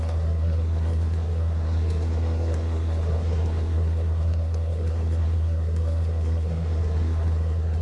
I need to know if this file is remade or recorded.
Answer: remade